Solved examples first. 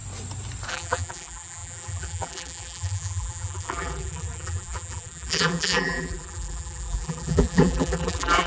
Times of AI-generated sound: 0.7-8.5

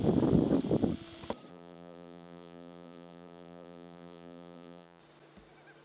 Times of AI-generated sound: 1.5-5.0

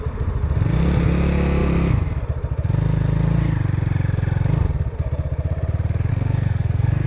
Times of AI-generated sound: 6.1-7.1